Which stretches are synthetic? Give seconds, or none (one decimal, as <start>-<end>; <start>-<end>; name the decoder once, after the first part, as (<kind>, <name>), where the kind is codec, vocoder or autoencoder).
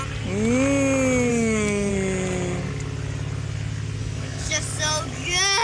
1.3-1.9 (codec, DAC); 4.0-4.6